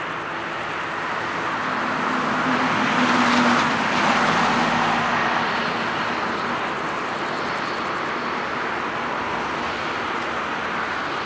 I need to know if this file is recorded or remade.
recorded